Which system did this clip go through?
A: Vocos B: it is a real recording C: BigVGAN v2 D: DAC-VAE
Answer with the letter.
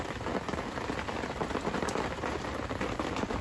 C